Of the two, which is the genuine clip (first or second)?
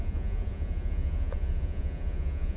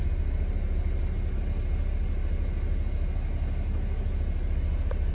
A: second